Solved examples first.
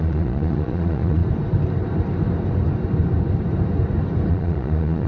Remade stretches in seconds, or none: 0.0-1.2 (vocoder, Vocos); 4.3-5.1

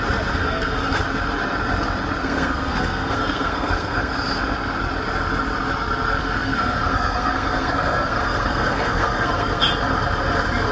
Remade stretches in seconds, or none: 0.4-1.0 (codec, SNAC); 2.2-4.1; 6.2-9.7

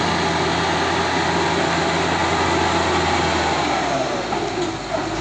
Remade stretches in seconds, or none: none

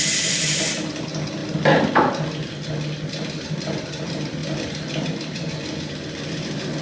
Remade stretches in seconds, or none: none